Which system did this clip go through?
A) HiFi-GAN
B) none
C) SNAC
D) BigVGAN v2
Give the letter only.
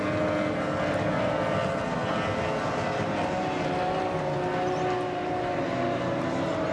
B